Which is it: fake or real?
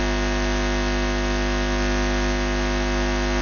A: real